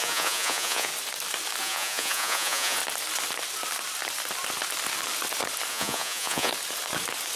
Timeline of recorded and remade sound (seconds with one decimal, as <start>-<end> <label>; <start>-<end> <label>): 0.0-0.9 remade; 0.9-1.6 recorded; 1.6-2.8 remade; 2.8-5.7 recorded; 5.7-6.5 remade; 6.5-7.4 recorded